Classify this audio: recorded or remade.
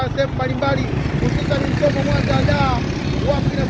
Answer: recorded